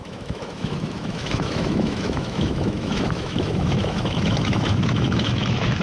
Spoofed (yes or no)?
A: yes